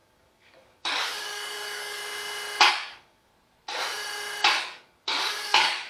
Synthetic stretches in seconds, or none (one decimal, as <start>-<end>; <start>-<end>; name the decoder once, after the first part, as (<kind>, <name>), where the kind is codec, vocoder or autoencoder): 0.0-2.0 (codec, DAC); 2.7-3.3; 4.6-5.9